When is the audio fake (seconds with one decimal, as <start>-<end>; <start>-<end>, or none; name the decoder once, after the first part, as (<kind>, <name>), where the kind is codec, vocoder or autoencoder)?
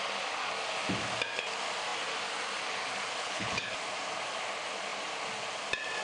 3.2-3.7 (codec, HILCodec)